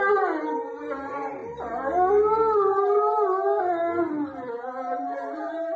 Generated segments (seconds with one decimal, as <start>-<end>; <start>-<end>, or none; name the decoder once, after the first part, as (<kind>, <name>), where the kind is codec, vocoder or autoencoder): none